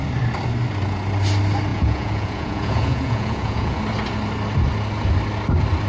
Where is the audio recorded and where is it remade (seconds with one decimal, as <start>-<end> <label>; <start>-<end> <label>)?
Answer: 0.0-1.7 recorded; 1.7-3.8 remade; 3.8-5.9 recorded